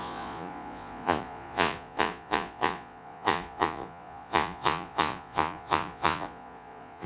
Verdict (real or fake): fake